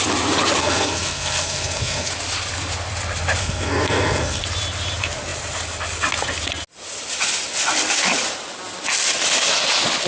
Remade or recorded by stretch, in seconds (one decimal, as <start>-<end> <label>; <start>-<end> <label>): 0.0-0.6 recorded; 0.6-2.1 remade; 2.1-3.4 recorded; 3.4-4.4 remade; 4.4-10.1 recorded